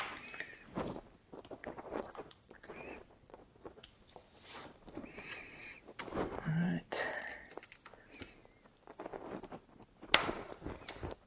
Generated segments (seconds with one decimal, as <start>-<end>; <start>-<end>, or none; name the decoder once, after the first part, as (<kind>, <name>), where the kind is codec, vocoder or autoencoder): 1.6-6.0 (vocoder, Vocos); 6.9-7.5